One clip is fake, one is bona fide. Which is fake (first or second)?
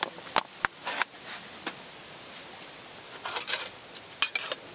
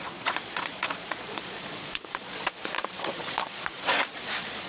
second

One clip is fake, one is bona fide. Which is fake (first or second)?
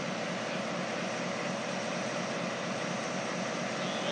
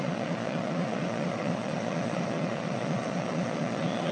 second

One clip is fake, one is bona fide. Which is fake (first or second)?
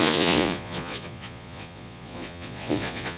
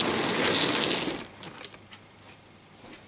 first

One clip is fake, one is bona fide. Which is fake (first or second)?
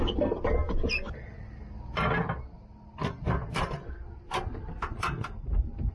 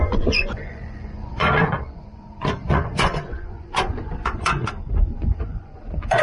second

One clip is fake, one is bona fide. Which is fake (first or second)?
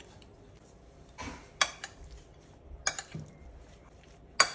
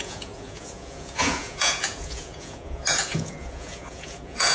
second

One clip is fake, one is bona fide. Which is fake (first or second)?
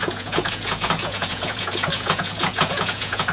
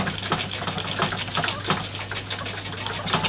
first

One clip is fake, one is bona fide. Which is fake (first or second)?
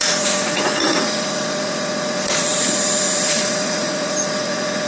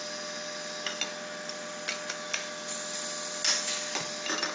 first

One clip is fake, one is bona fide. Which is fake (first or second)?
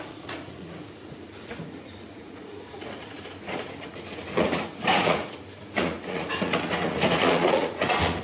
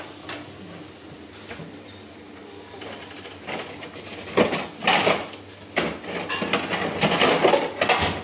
first